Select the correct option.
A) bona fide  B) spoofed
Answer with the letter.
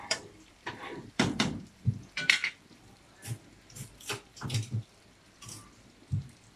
B